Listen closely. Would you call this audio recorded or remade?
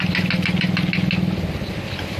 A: recorded